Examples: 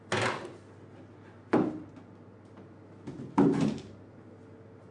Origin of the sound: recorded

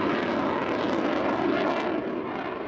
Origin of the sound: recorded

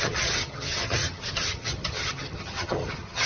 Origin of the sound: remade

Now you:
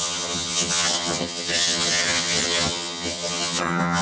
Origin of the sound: remade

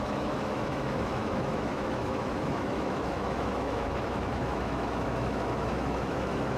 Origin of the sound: remade